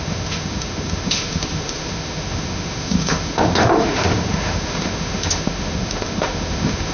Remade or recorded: remade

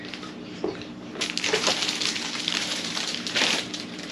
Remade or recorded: remade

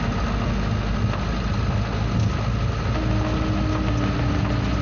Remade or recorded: recorded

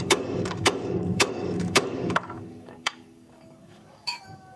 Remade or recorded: remade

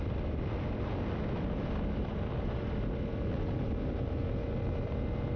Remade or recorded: recorded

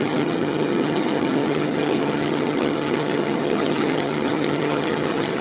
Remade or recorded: remade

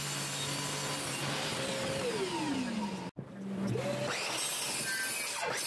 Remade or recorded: recorded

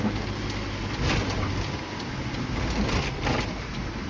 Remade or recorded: recorded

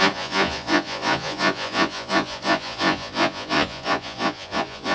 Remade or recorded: remade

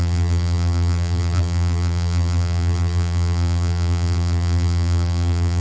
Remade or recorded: remade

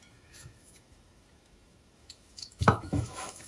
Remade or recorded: remade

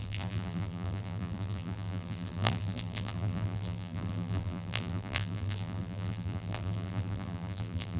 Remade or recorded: remade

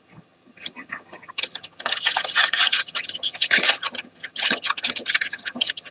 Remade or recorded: remade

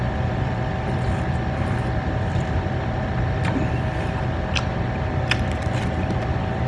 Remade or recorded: remade